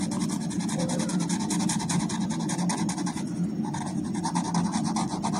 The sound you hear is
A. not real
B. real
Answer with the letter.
B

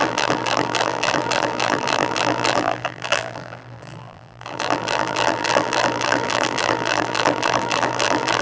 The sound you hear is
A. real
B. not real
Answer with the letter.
B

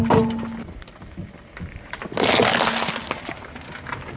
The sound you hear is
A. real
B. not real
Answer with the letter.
A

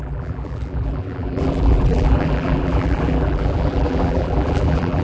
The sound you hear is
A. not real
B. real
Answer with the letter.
A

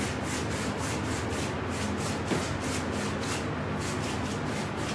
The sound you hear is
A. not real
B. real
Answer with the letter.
B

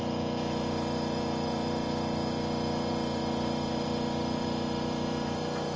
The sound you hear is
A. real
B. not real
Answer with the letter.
B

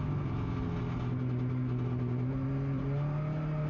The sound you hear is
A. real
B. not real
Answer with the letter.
A